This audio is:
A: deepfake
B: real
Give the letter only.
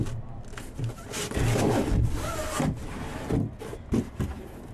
B